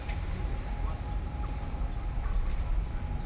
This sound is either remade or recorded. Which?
recorded